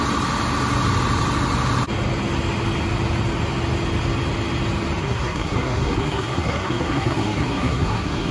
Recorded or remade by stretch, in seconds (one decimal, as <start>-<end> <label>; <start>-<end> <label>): 0.0-5.0 recorded; 5.0-8.3 remade

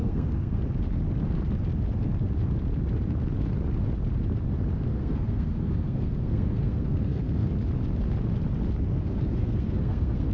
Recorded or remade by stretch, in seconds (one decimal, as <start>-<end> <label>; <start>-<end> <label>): 0.0-0.6 remade; 0.6-4.9 recorded; 4.9-7.5 remade; 7.5-8.9 recorded; 8.9-10.3 remade

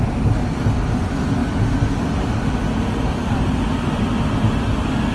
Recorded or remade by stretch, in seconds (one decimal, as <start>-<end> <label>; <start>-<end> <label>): 0.0-5.1 recorded

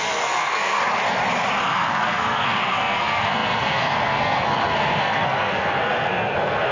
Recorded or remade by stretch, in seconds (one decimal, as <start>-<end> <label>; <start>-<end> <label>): 0.0-0.8 remade; 0.8-1.6 recorded; 1.6-6.7 remade

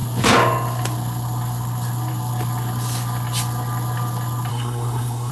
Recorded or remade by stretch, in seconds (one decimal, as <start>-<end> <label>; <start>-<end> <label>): 0.0-4.5 recorded; 4.5-5.3 remade